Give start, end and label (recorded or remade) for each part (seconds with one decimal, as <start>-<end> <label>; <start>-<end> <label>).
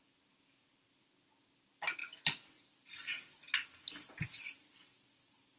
0.0-5.6 recorded